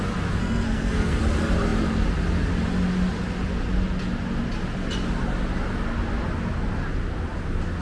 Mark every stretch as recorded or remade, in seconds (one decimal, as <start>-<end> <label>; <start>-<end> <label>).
0.0-0.4 recorded; 0.4-1.2 remade; 1.2-7.8 recorded